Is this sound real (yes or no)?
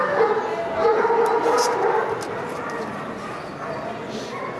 yes